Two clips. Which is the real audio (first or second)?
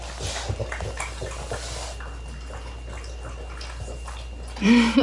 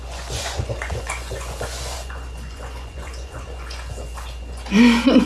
first